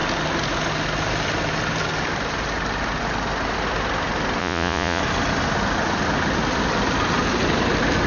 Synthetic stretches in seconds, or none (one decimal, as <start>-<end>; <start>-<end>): 4.4-5.0